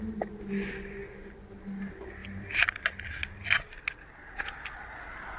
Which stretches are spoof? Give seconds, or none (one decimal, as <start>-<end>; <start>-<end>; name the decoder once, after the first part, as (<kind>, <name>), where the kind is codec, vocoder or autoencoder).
none